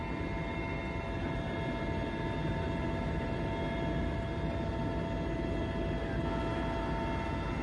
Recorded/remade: recorded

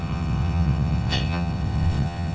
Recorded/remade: remade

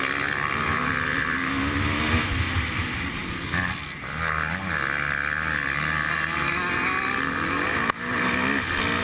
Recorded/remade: recorded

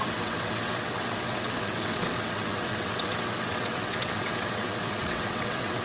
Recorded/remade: remade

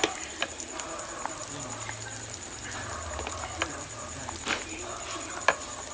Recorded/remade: recorded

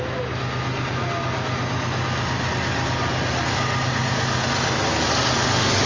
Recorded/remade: recorded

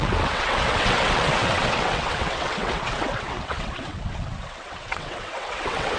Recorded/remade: remade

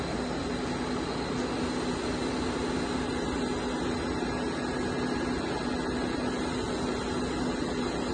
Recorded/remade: recorded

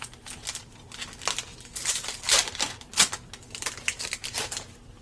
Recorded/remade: recorded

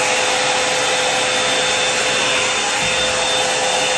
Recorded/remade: recorded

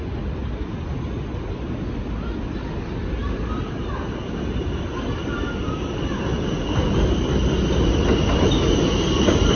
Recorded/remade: recorded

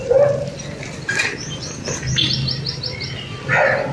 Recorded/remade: recorded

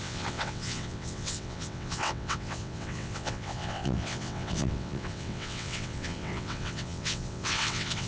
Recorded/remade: remade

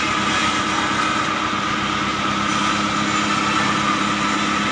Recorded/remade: recorded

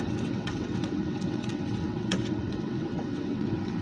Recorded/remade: remade